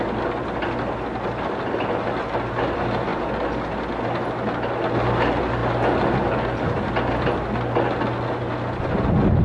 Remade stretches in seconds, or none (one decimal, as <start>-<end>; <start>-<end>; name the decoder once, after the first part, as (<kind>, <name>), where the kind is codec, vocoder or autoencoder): 3.1-3.9 (vocoder, BigVGAN v2)